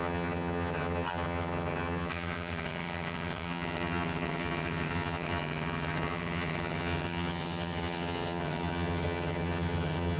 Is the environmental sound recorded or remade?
remade